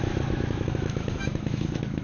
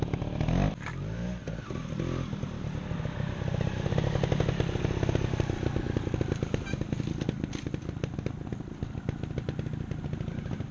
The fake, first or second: first